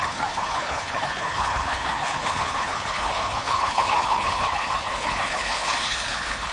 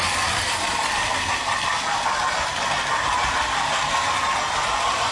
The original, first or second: second